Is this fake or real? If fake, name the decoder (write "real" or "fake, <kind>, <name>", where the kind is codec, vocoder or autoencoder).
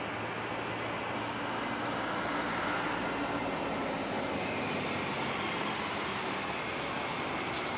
real